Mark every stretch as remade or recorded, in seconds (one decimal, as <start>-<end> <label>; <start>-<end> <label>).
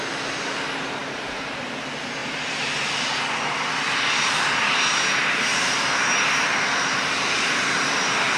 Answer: 0.0-1.0 recorded; 1.0-1.6 remade; 1.6-5.5 recorded; 5.5-8.4 remade